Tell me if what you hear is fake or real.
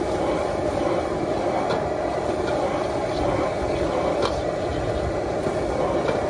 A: real